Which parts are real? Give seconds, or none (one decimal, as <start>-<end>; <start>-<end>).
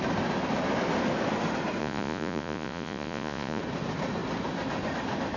0.0-1.8; 3.6-5.4